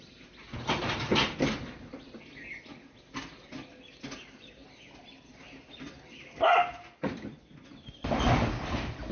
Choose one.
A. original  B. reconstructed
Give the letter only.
A